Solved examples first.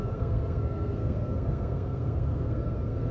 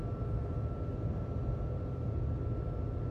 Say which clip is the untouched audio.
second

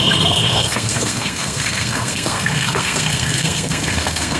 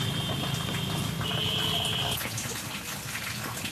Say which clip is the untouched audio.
second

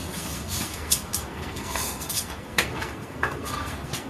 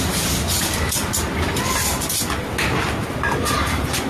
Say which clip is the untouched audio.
second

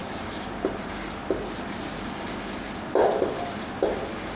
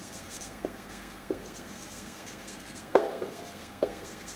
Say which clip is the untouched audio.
first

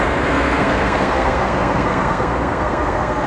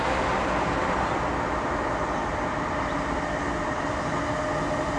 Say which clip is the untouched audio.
second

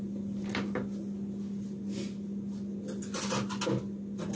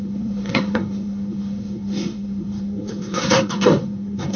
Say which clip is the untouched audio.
first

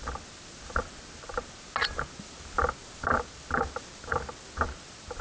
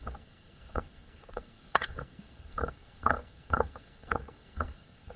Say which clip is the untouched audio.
first